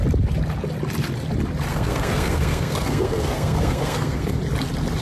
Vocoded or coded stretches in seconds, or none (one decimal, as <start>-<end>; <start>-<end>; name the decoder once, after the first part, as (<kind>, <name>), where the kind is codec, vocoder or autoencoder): 1.7-4.4 (codec, SNAC)